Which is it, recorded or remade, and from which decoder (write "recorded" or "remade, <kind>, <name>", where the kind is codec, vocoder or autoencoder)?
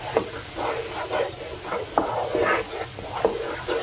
recorded